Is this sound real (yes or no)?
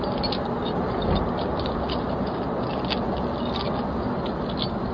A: yes